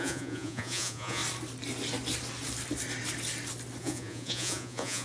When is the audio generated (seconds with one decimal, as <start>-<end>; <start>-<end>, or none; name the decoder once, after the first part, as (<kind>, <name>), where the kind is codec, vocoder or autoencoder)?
0.0-1.2 (vocoder, Vocos); 3.8-5.0